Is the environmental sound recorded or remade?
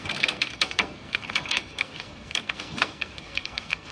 remade